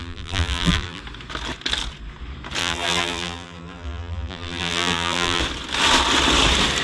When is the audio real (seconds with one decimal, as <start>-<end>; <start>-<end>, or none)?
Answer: 1.0-2.6; 5.4-6.8